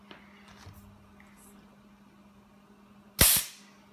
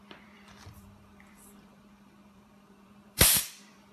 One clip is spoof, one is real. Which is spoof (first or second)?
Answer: second